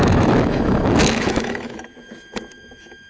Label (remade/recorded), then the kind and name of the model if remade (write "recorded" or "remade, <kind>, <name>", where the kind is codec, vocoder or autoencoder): remade, autoencoder, DAC-VAE